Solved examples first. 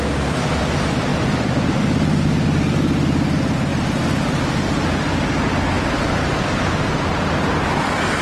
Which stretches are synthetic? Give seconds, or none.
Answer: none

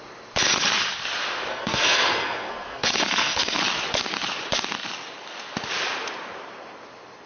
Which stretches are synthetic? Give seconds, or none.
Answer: 1.5-3.6 (codec, SNAC)

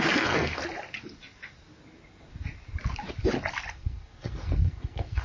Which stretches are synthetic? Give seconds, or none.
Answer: 0.0-0.6 (codec, SNAC); 3.7-5.2